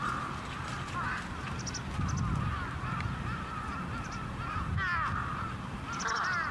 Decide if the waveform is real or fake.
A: real